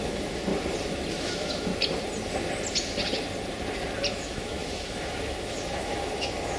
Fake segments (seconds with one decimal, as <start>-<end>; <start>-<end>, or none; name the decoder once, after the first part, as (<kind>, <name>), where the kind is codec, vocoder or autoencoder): 0.0-0.5 (autoencoder, DAC-VAE); 1.1-1.7; 4.1-6.6